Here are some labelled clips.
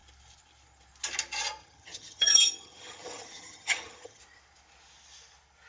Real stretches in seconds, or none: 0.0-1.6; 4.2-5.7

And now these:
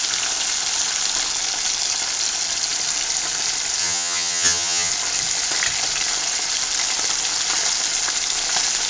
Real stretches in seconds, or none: 0.0-3.8; 4.9-8.9